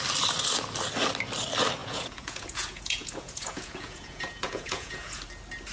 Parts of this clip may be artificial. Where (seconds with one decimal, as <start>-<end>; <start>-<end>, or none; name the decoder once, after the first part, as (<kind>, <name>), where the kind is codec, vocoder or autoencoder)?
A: 1.8-5.2 (vocoder, Vocos)